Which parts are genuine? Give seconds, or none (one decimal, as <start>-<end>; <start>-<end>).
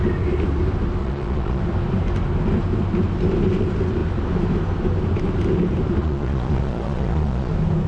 0.0-1.0; 1.6-6.0; 7.5-7.9